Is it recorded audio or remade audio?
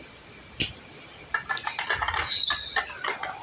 recorded